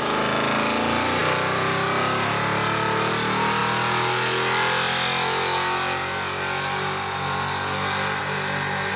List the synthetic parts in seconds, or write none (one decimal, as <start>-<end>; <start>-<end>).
none